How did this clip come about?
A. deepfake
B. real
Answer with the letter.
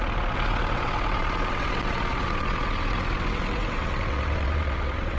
A